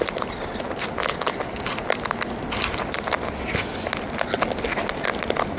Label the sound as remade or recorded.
recorded